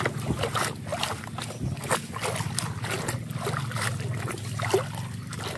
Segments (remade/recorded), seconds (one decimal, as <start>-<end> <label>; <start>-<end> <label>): 0.0-5.6 recorded